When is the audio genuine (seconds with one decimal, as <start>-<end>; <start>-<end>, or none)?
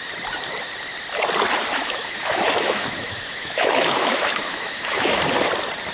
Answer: 0.0-1.7; 5.2-5.9